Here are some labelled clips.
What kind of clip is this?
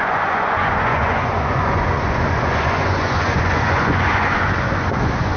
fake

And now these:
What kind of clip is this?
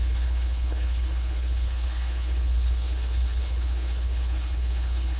fake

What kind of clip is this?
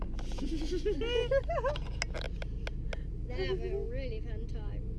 real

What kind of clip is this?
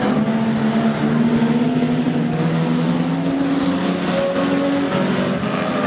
real